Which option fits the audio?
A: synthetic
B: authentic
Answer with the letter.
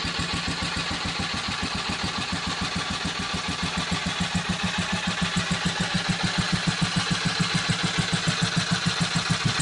B